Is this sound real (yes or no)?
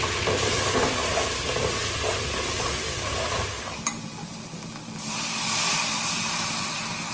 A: no